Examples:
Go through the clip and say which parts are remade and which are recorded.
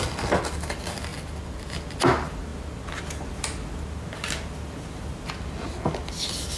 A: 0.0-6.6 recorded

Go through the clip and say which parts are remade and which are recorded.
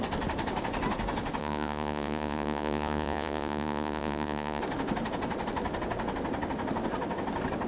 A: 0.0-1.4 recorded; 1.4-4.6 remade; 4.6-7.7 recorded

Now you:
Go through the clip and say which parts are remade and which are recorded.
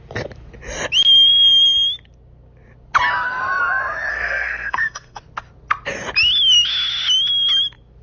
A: 0.0-4.1 recorded; 4.1-5.2 remade; 5.2-8.0 recorded